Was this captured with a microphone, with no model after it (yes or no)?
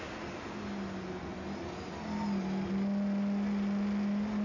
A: yes